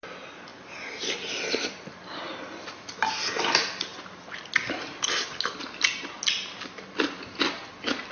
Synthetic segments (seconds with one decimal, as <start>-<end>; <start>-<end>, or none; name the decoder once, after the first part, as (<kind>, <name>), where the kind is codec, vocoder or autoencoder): none